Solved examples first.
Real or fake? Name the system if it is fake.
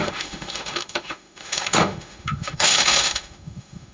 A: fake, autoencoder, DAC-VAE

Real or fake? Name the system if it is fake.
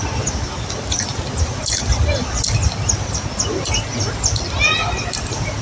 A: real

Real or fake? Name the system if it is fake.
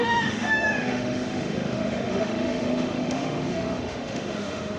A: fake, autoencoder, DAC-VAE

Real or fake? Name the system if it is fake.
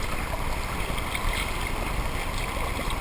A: real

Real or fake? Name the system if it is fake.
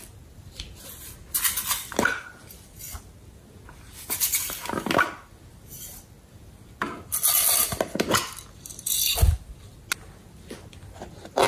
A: real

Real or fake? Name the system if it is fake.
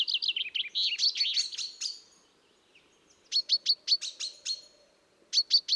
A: real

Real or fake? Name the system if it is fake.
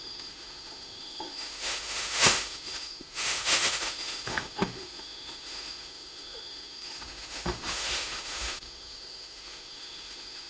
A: fake, autoencoder, DAC-VAE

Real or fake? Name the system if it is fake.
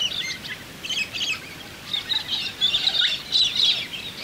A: real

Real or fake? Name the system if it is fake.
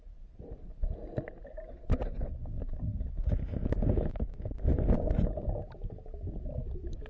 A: real